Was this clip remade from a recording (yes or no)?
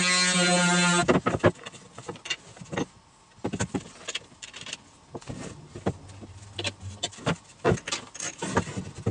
no